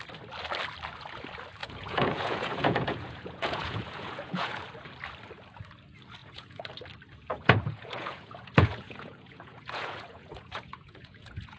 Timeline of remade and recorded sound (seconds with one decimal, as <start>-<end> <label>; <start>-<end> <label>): 0.0-1.6 recorded; 1.6-4.6 remade; 4.6-6.2 recorded; 6.2-6.7 remade; 6.7-7.3 recorded; 7.3-11.6 remade